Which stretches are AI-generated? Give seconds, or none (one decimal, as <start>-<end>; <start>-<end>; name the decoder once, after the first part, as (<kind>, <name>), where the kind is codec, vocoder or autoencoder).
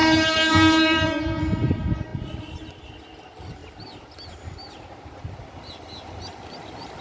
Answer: 0.0-1.2 (codec, SNAC)